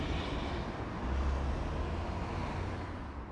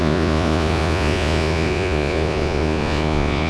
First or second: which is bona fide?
first